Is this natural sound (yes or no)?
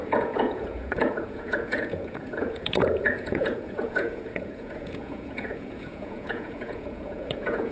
no